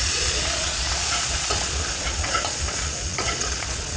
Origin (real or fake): fake